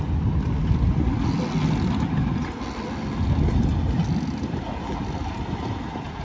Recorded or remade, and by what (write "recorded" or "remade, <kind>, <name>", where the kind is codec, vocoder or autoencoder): recorded